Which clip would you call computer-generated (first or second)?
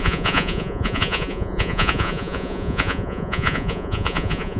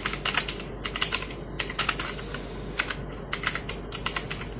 first